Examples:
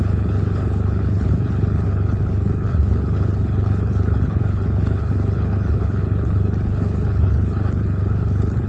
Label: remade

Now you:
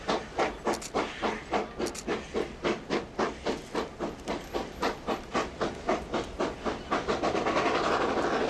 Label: recorded